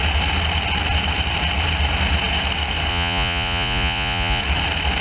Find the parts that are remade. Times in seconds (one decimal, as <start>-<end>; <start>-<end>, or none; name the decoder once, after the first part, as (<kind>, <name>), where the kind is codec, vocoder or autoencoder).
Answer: 2.9-4.4 (vocoder, Vocos)